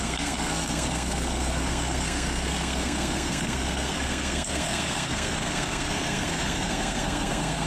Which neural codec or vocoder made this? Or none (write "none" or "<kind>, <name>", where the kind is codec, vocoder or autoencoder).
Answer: codec, SNAC